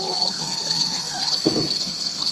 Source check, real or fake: fake